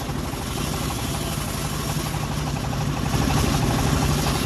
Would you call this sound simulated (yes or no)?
no